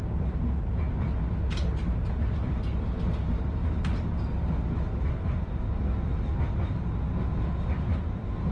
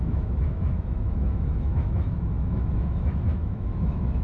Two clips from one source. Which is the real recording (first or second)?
first